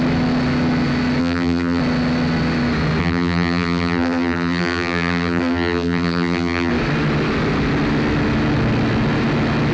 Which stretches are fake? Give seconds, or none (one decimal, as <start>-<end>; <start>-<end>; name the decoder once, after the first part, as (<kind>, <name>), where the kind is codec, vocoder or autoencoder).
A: 1.2-1.8 (vocoder, BigVGAN v2); 3.0-6.7